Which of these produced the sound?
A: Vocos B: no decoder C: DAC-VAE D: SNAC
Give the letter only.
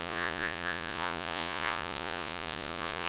A